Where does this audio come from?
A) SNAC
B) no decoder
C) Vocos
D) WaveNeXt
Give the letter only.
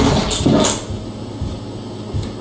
B